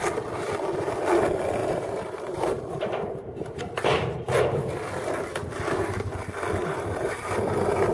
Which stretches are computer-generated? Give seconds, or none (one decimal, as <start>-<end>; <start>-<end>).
1.6-3.6; 6.6-7.9

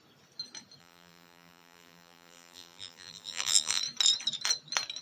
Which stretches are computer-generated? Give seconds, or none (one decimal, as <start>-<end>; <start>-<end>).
0.8-3.8

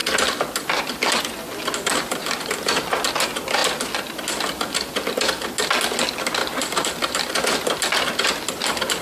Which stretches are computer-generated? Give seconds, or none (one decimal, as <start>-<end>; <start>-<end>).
1.9-2.8; 6.4-7.3